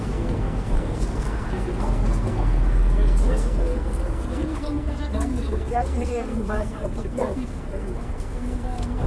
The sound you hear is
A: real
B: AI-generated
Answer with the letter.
B